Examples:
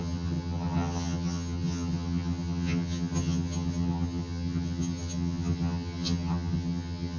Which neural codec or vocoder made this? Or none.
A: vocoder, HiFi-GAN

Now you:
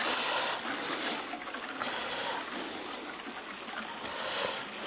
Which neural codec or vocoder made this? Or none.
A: none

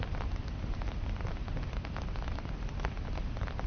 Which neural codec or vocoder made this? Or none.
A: none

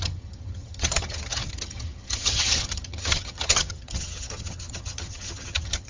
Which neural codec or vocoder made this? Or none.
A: vocoder, HiFi-GAN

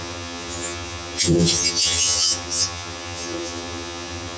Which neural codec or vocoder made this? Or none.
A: vocoder, HiFi-GAN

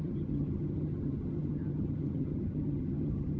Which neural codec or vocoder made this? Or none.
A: vocoder, HiFi-GAN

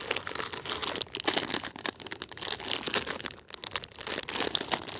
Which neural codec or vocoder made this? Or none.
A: none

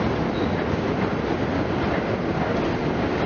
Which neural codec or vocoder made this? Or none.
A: none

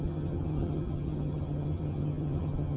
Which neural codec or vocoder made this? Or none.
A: vocoder, HiFi-GAN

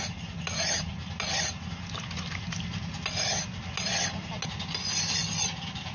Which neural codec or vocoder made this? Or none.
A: none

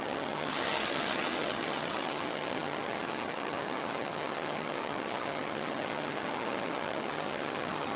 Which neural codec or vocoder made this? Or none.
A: vocoder, HiFi-GAN